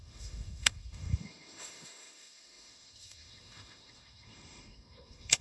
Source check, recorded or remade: remade